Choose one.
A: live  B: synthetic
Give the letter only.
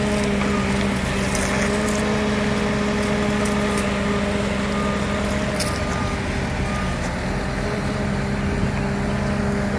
A